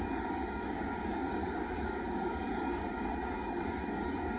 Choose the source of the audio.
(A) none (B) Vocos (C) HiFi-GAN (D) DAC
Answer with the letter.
D